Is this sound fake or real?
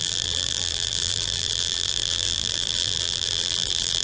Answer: fake